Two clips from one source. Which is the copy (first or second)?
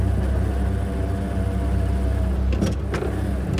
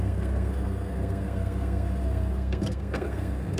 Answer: second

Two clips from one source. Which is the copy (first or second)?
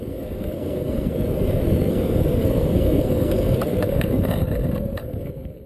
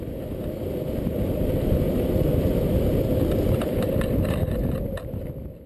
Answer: first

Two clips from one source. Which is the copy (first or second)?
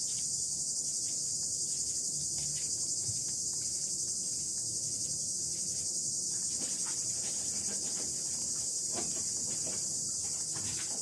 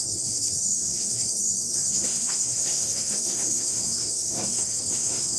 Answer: second